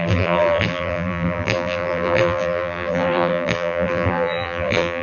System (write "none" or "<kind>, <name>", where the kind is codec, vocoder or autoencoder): vocoder, BigVGAN v2